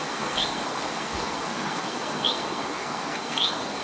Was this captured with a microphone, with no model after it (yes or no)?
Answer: no